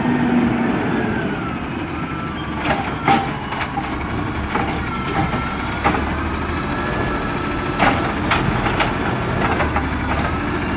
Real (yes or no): yes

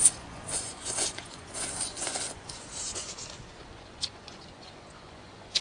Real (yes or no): no